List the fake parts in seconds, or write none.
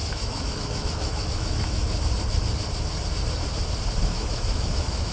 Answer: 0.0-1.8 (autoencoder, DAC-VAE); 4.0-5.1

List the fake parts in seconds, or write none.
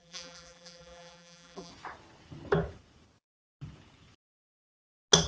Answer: 0.0-1.7 (vocoder, BigVGAN v2)